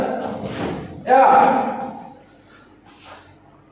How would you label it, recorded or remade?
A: recorded